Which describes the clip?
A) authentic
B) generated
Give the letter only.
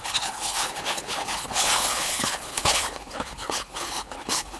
B